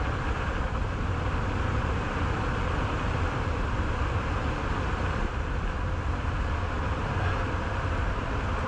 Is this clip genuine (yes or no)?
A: no